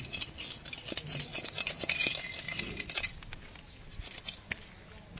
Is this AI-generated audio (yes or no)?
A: no